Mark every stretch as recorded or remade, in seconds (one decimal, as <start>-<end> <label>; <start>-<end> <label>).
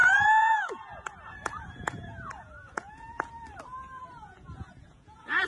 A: 0.0-3.3 remade; 3.3-3.7 recorded; 3.7-5.5 remade